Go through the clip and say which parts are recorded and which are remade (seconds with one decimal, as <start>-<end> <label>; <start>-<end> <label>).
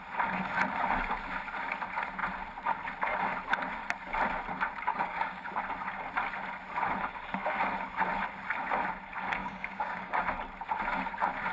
0.0-4.9 recorded; 4.9-5.5 remade; 5.5-9.4 recorded; 9.4-10.2 remade; 10.2-11.5 recorded